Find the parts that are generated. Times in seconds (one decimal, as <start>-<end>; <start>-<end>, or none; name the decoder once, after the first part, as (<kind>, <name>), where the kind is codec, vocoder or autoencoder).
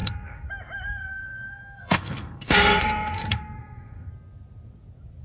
0.0-0.5 (codec, SNAC); 1.0-4.1